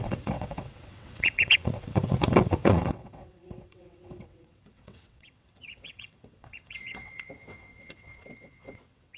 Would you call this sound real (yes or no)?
no